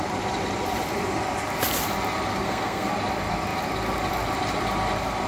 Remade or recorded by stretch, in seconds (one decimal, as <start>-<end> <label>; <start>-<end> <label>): 0.0-2.3 recorded; 2.3-2.9 remade; 2.9-5.3 recorded